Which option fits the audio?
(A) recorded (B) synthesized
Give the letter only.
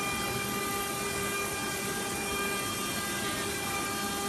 A